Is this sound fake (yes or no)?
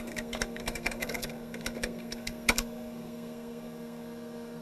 yes